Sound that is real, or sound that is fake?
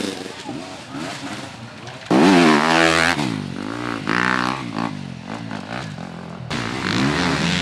real